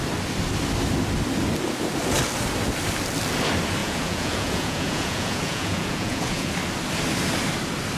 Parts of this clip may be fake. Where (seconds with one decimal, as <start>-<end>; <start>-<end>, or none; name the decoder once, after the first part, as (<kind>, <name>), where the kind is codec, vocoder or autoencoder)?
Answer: 3.8-6.5 (vocoder, Vocos)

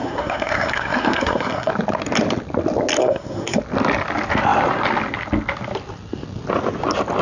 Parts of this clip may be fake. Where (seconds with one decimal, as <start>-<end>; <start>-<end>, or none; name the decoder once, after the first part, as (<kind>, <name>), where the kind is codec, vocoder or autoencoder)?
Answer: 0.0-1.7 (codec, SNAC); 3.0-3.6